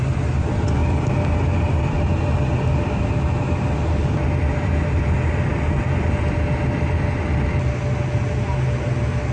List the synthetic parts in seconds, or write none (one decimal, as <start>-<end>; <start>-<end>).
none